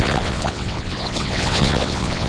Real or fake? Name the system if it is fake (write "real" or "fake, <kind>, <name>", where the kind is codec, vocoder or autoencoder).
fake, vocoder, WaveNeXt